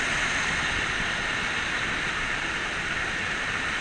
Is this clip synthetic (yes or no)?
no